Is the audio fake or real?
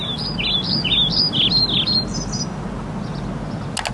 real